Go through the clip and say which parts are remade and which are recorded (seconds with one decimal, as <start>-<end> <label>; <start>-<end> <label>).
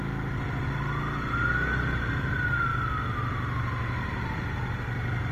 0.0-5.3 recorded